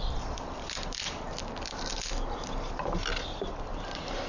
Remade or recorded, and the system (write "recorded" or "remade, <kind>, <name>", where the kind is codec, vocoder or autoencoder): recorded